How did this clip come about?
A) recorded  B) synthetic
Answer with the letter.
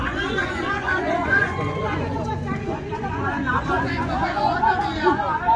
B